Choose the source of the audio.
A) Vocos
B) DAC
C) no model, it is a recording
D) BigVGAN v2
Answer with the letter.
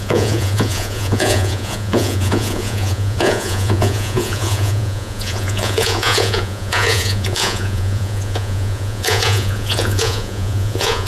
A